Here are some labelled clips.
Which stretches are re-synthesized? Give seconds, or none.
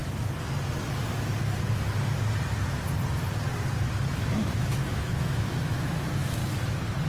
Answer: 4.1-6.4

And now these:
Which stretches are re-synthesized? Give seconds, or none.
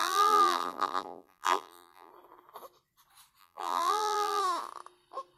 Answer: 0.0-2.1; 3.4-4.4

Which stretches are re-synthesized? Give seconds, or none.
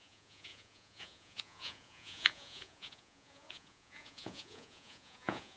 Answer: 0.0-5.6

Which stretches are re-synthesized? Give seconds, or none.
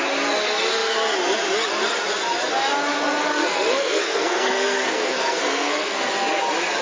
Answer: 3.3-6.1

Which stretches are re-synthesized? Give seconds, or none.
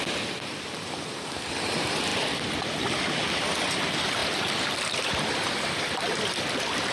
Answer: 2.1-3.7; 4.2-5.5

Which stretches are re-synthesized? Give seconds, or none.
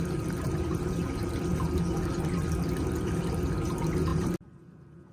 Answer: none